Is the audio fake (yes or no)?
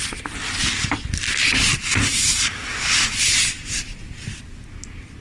no